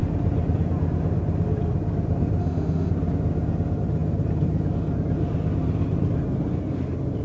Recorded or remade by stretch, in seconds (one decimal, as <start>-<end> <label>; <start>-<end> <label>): 0.0-2.4 recorded; 2.4-2.9 remade; 2.9-7.2 recorded